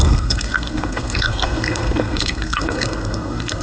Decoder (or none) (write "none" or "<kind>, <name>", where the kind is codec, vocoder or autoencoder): codec, SNAC